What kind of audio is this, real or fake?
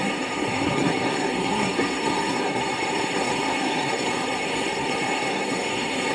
fake